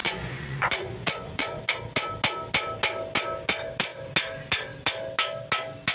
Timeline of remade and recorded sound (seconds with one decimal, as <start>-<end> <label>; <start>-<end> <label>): 0.0-1.6 remade; 1.6-5.9 recorded